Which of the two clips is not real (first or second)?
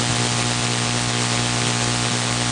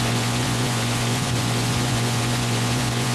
second